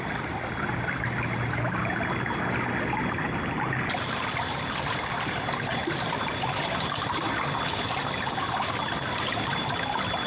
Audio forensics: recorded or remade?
recorded